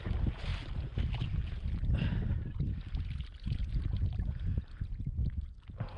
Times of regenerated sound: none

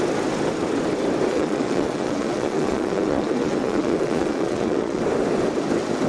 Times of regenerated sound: 1.3-5.0 (vocoder, Vocos)

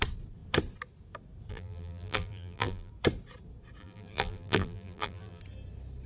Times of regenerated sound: 1.5-2.9 (vocoder, BigVGAN v2); 3.8-5.4

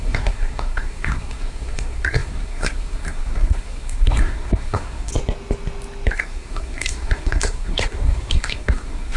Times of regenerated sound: 0.0-5.1 (codec, SNAC); 6.1-9.2